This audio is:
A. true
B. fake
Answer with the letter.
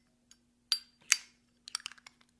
A